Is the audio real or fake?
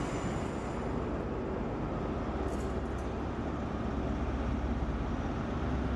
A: real